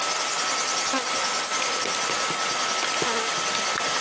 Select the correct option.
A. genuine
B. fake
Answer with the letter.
A